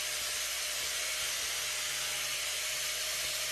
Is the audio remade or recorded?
recorded